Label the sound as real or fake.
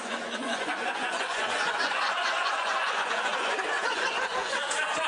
fake